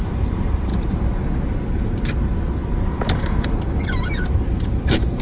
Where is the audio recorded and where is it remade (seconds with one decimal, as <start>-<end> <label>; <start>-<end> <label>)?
0.0-0.7 remade; 0.7-3.8 recorded; 3.8-5.2 remade

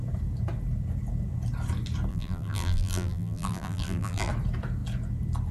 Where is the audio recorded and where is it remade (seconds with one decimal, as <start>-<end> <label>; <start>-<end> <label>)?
0.0-2.1 recorded; 2.1-4.3 remade; 4.3-5.5 recorded

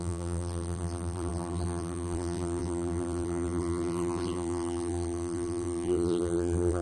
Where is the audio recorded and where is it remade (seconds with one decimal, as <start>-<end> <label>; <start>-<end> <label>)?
0.0-6.8 remade

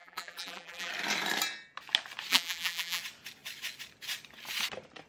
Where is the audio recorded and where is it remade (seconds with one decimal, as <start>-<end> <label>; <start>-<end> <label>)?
0.0-0.9 remade; 0.9-2.3 recorded; 2.3-3.0 remade; 3.0-5.1 recorded